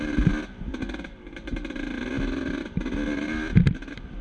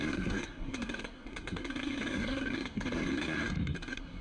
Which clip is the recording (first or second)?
first